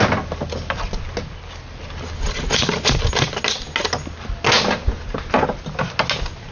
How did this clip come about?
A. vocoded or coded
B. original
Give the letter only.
B